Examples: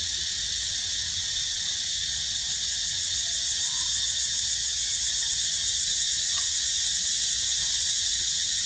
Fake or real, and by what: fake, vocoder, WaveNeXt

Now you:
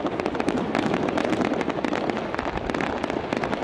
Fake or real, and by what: real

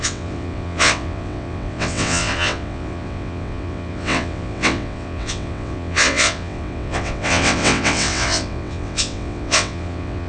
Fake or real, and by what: fake, vocoder, WaveNeXt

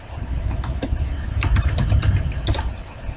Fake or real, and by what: real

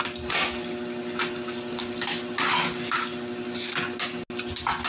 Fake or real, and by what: real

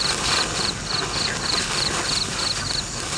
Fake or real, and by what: real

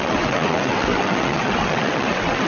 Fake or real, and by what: fake, vocoder, WaveNeXt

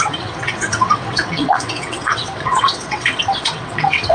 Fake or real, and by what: fake, vocoder, WaveNeXt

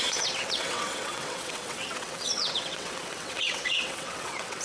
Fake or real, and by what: fake, vocoder, WaveNeXt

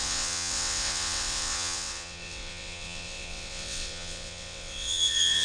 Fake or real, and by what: fake, vocoder, WaveNeXt